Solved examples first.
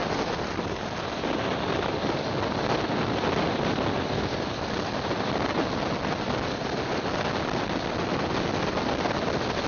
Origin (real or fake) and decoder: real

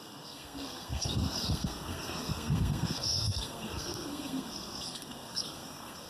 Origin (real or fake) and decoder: fake, codec, SNAC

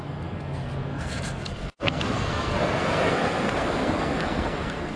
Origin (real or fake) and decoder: fake, codec, SNAC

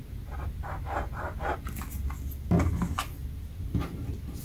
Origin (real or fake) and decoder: real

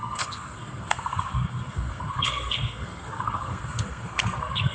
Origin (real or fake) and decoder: fake, codec, SNAC